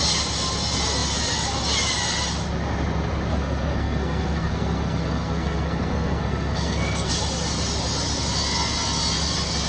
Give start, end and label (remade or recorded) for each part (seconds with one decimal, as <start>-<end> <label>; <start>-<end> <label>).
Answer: 0.0-3.3 recorded; 3.3-7.1 remade; 7.1-9.7 recorded